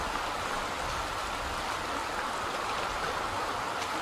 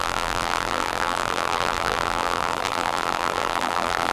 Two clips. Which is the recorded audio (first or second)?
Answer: first